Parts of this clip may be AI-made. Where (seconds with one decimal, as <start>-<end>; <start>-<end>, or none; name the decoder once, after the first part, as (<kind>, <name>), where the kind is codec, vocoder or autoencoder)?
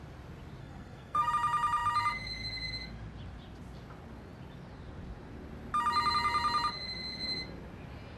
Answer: 0.6-1.3 (codec, SNAC)